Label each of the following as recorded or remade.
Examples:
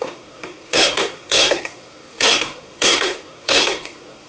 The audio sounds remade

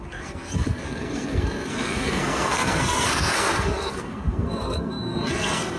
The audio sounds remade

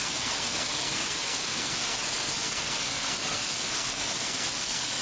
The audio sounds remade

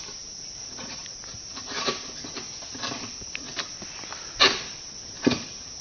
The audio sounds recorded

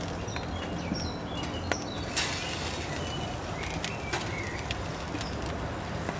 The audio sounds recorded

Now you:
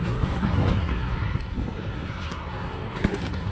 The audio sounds remade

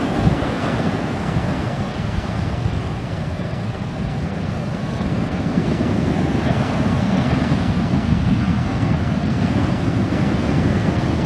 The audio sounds remade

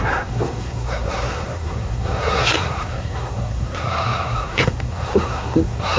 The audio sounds remade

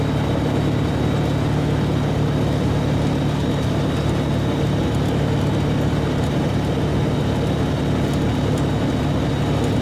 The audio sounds recorded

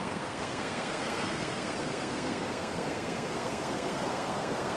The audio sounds remade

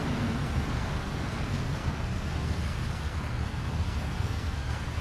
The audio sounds remade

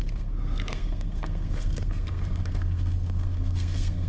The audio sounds remade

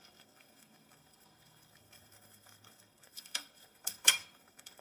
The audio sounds remade